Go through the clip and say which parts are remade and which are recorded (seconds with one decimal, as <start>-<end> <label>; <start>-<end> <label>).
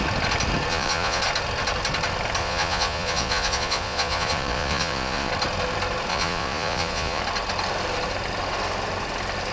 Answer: 0.0-0.7 recorded; 0.7-1.2 remade; 1.2-2.4 recorded; 2.4-5.3 remade; 5.3-6.1 recorded; 6.1-7.2 remade; 7.2-9.5 recorded